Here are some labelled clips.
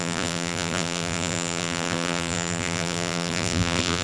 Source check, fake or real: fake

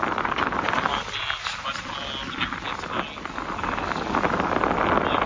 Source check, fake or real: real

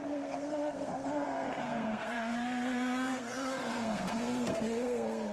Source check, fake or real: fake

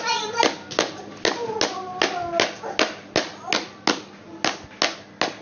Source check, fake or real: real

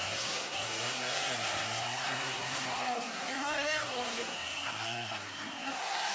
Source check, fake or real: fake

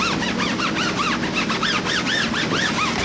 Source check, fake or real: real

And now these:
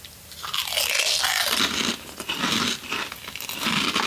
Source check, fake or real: real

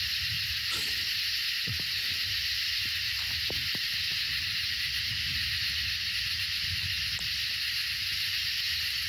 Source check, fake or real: real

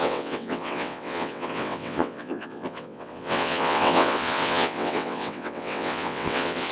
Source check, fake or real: fake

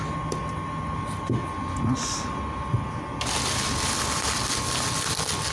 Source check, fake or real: real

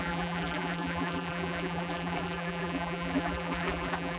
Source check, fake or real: fake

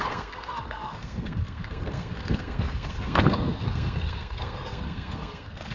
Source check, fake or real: fake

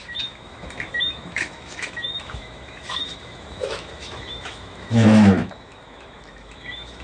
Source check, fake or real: fake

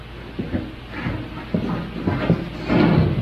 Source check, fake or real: real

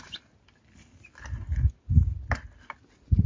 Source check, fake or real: real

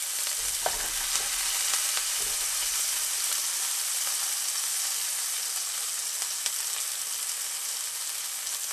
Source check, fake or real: real